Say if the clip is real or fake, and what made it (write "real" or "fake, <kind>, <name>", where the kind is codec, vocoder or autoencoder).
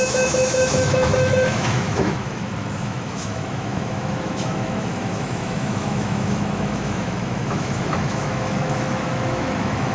fake, autoencoder, DAC-VAE